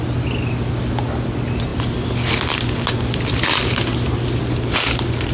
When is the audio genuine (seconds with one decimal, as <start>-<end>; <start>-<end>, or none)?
0.0-5.3